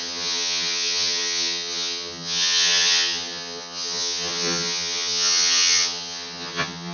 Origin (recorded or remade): remade